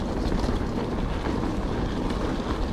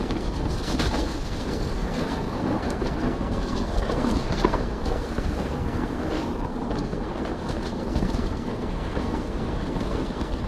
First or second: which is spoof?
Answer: second